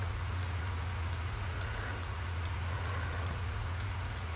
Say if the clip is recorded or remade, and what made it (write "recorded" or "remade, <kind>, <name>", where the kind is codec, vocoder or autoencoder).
remade, vocoder, Vocos